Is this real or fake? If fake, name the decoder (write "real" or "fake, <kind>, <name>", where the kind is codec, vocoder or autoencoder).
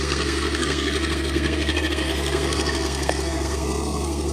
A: fake, codec, SNAC